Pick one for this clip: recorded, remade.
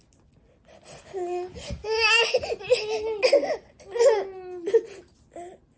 recorded